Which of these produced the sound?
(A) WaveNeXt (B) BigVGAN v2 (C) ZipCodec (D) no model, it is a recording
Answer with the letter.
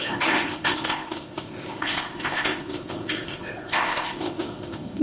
C